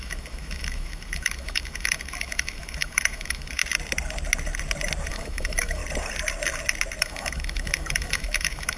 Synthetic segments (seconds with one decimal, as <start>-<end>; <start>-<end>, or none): 0.0-3.6; 5.1-5.8; 7.0-8.8

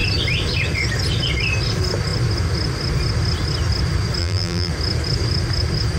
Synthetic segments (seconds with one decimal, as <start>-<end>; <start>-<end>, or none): 4.2-4.7

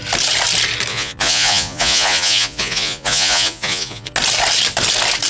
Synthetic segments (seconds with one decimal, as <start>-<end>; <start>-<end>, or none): 0.9-4.1

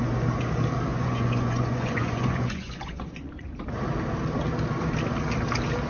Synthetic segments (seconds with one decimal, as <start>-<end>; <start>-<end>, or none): 0.9-3.5

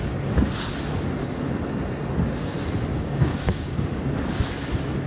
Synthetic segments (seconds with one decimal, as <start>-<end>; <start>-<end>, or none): 2.9-3.7

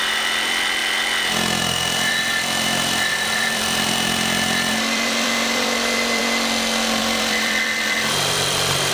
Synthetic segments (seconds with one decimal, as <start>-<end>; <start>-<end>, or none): 0.0-6.2; 7.0-8.9

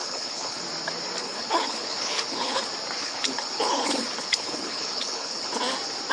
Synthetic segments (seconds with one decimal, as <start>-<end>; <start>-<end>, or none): 0.0-0.6; 1.2-2.6; 3.0-5.5

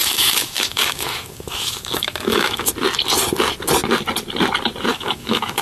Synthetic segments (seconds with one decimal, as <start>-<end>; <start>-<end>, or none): 0.0-2.7; 4.9-5.6